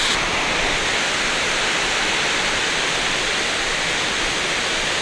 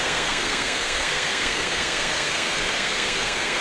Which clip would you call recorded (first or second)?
first